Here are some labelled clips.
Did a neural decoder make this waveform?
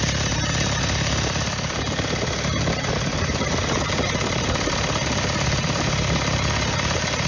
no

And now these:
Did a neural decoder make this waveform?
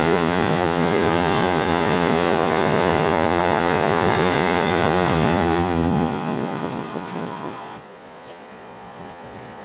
yes